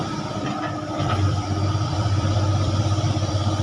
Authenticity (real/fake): fake